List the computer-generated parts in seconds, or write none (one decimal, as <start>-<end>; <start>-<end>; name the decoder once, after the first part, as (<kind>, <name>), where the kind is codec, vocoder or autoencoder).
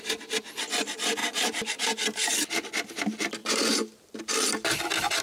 1.2-2.0 (vocoder, BigVGAN v2); 3.4-4.3